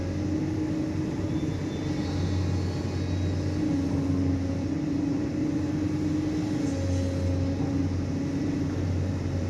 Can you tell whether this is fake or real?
real